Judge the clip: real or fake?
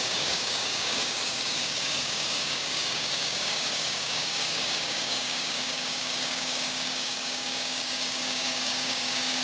fake